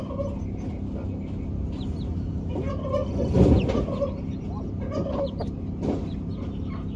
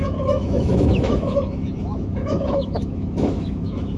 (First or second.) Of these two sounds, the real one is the first